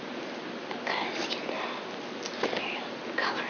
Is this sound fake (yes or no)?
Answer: no